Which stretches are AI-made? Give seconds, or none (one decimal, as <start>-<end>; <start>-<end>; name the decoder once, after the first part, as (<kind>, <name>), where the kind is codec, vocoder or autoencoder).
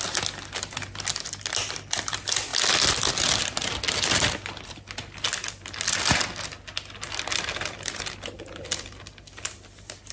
none